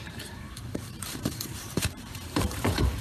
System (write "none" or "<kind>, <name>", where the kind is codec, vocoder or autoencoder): vocoder, BigVGAN v2